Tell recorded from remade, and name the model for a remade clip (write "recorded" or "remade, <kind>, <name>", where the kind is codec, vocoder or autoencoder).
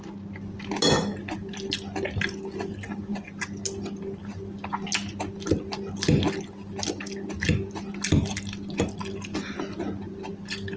recorded